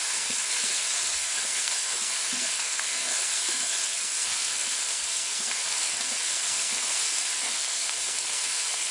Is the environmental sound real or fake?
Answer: fake